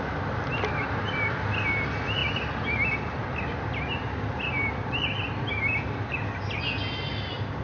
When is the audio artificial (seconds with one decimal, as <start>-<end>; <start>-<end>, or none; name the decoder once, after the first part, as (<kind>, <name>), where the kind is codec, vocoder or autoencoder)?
none